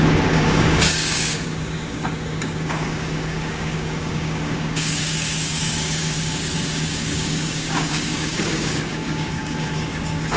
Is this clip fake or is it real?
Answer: fake